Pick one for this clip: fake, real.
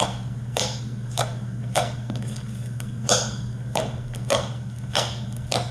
fake